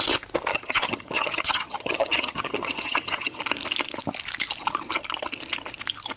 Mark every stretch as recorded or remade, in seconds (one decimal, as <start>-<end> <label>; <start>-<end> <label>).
0.0-0.5 recorded; 0.5-3.4 remade; 3.4-6.2 recorded